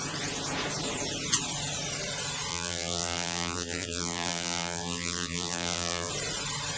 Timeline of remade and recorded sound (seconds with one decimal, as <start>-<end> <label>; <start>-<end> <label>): 0.0-2.5 recorded; 2.5-6.1 remade; 6.1-6.8 recorded